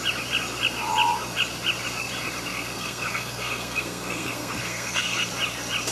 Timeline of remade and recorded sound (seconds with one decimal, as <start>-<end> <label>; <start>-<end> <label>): 0.0-2.5 recorded; 2.5-5.3 remade; 5.3-5.9 recorded